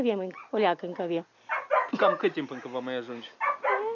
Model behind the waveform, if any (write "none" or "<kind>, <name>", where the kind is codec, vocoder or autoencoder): none